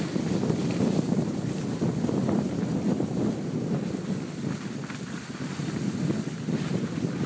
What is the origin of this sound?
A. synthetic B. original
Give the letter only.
B